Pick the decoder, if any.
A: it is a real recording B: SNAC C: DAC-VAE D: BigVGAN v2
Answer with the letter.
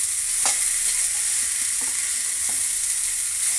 A